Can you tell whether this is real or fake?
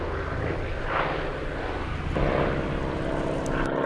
real